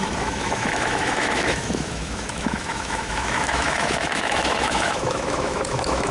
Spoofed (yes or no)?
yes